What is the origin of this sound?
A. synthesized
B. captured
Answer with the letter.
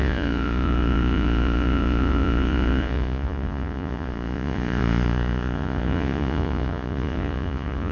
A